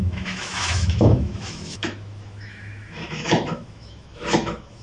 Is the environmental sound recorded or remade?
remade